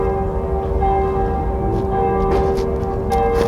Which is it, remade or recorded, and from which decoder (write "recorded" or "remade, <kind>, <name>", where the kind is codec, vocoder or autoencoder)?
recorded